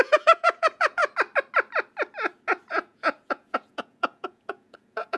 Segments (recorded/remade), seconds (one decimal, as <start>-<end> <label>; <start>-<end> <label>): 0.0-1.0 remade; 1.0-2.7 recorded; 2.7-5.2 remade